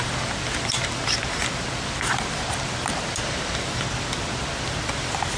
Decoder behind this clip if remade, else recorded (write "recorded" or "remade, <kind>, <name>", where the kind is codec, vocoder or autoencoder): remade, vocoder, BigVGAN v2